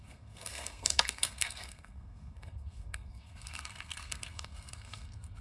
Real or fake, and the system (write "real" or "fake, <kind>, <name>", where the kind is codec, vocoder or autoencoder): fake, codec, SNAC